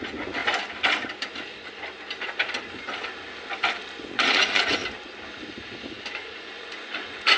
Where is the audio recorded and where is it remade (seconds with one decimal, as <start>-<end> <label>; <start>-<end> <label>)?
0.0-0.4 remade; 0.4-4.0 recorded; 4.0-4.8 remade; 4.8-6.1 recorded; 6.1-7.4 remade